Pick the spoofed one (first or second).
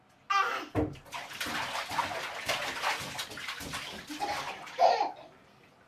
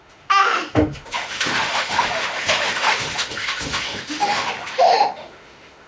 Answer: second